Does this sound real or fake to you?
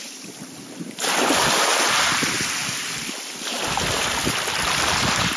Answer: real